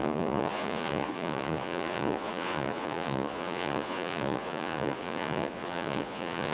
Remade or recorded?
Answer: remade